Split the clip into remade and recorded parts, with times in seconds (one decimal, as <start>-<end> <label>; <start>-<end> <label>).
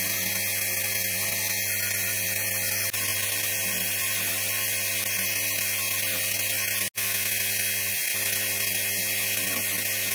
0.0-10.1 recorded